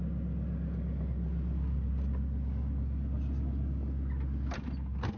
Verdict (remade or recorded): recorded